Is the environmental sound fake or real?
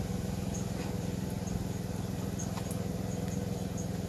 real